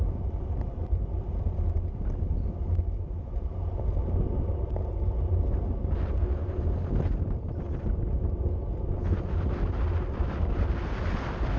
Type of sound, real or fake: real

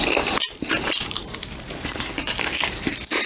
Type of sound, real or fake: fake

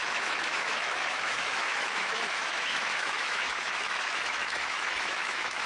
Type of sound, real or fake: fake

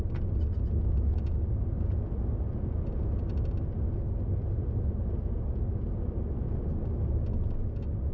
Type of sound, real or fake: real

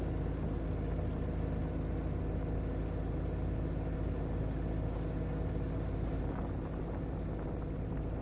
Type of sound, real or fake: real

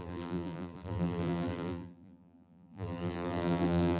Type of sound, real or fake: fake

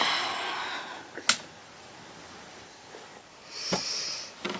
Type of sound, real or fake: real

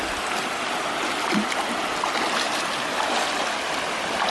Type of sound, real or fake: real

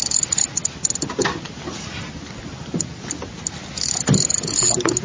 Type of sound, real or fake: real